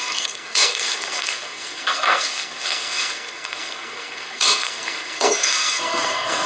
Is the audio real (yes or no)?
no